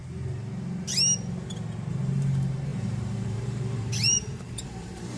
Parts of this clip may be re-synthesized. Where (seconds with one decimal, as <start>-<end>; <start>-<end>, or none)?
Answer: 1.9-5.2